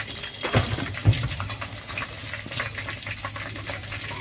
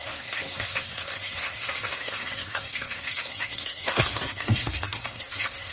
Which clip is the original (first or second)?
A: first